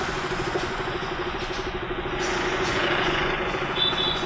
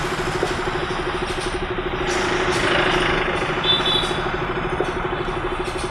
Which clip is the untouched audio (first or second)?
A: second